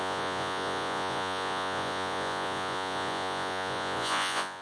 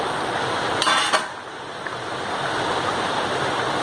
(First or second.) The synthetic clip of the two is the first